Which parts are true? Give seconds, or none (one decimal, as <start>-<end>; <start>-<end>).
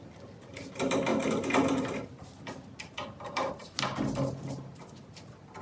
0.0-5.6